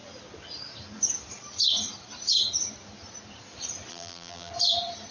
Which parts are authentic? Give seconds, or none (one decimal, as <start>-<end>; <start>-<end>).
0.0-3.9; 4.5-5.1